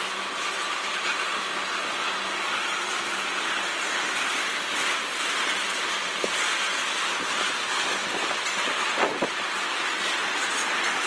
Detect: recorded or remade recorded